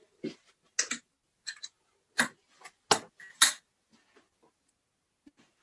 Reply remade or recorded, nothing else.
recorded